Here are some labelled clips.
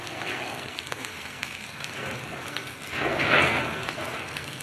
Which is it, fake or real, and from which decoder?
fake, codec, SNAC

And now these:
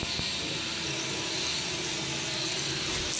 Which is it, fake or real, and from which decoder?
real